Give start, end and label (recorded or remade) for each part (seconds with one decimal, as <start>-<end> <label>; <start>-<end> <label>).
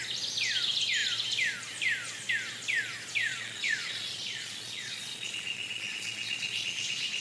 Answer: 0.0-3.3 recorded; 3.3-7.2 remade